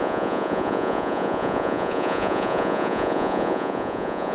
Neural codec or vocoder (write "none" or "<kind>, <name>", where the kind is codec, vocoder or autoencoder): vocoder, Vocos